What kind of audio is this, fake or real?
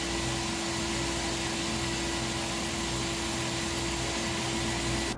real